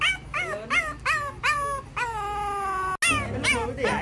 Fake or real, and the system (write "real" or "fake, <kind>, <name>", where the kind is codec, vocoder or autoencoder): real